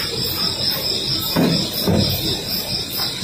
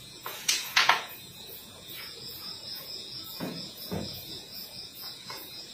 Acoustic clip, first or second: first